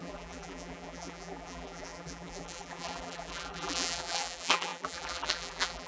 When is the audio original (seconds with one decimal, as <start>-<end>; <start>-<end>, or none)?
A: none